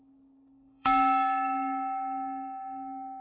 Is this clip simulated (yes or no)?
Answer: yes